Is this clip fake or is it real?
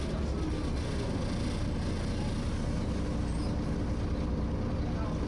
real